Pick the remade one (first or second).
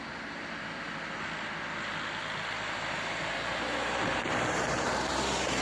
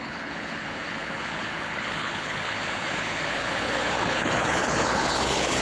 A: second